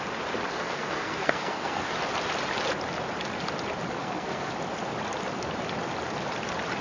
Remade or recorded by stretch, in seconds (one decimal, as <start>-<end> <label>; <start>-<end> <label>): 0.0-0.5 recorded; 0.5-1.9 remade; 1.9-4.0 recorded; 4.0-4.5 remade; 4.5-6.8 recorded